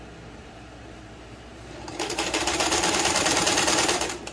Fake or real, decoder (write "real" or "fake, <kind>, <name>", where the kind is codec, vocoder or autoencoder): fake, vocoder, BigVGAN v2